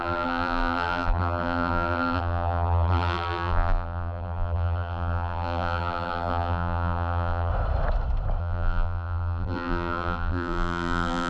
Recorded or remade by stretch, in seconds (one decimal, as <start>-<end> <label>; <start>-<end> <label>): 0.0-7.5 remade; 7.5-8.4 recorded; 8.4-11.3 remade